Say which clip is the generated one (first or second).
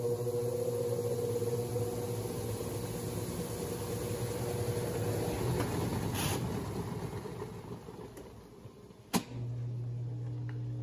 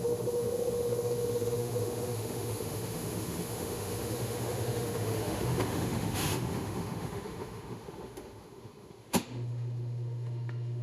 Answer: second